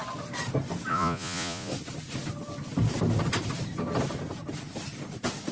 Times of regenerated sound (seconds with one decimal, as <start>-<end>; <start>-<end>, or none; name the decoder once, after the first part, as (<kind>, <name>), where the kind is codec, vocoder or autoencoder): 0.9-1.7 (vocoder, Vocos)